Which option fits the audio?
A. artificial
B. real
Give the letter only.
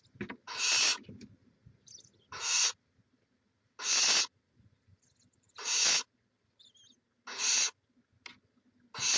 B